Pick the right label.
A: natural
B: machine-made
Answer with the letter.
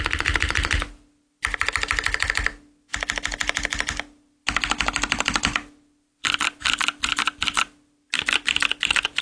A